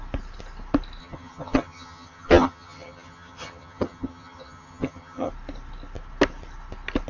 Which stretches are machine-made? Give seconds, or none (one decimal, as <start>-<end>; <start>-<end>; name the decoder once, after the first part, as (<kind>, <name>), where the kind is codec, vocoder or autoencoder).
1.0-5.3 (vocoder, HiFi-GAN)